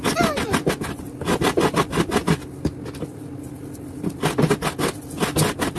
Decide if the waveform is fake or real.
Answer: real